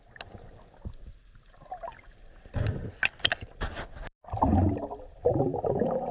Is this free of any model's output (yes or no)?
yes